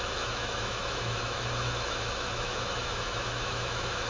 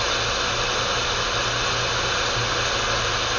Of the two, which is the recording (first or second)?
second